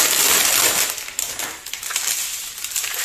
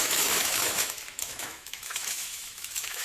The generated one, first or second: second